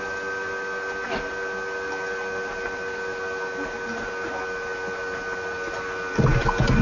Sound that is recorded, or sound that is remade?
recorded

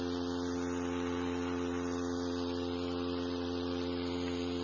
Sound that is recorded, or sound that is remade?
recorded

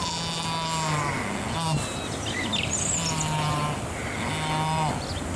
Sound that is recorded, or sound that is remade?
recorded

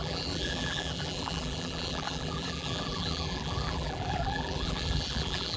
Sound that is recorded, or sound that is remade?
remade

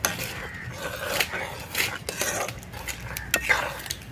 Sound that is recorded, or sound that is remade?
recorded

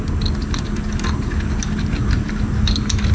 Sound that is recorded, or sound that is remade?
recorded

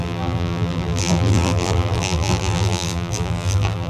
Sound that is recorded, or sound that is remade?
remade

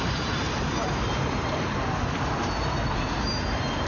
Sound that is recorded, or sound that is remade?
remade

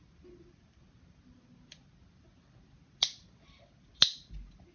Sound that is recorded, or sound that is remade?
recorded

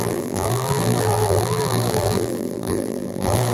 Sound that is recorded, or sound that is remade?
remade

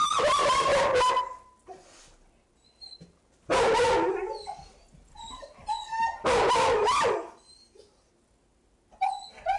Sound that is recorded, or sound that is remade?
recorded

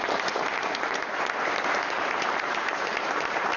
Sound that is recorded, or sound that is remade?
remade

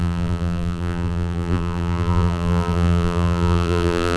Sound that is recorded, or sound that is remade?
remade